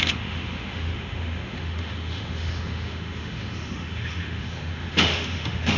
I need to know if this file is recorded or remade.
remade